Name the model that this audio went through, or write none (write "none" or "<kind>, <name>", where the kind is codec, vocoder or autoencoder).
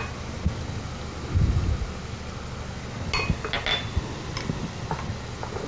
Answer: none